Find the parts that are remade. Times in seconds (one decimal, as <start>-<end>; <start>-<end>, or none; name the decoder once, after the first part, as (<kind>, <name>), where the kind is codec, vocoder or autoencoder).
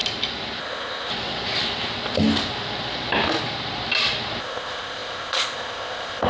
0.6-1.1 (codec, ZipCodec); 4.4-6.3